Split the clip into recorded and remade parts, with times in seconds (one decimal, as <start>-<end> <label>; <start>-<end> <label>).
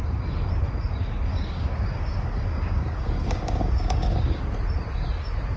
0.0-1.3 recorded; 1.3-4.4 remade; 4.4-5.6 recorded